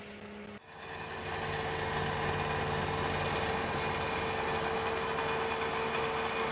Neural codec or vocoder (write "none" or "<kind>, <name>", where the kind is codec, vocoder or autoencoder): none